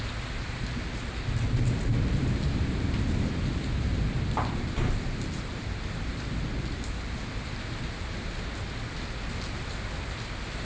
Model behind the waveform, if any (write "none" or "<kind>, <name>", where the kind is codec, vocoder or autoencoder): none